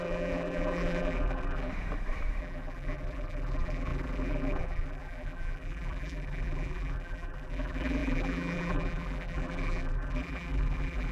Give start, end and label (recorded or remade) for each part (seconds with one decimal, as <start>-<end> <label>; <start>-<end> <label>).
0.0-1.7 remade; 1.7-2.4 recorded; 2.4-11.1 remade